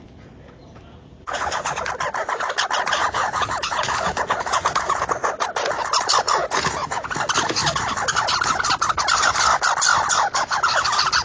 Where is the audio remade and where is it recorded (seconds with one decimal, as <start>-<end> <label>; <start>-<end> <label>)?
0.0-0.6 recorded; 0.6-1.7 remade; 1.7-3.0 recorded; 3.0-5.1 remade; 5.1-6.4 recorded; 6.4-7.1 remade; 7.1-11.2 recorded